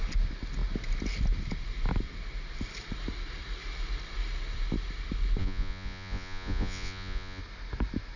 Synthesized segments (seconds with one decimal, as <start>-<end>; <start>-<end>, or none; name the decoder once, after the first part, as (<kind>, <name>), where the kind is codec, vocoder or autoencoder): 5.4-7.4 (vocoder, Vocos)